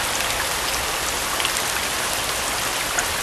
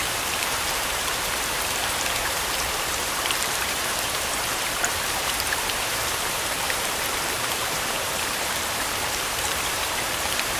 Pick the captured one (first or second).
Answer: first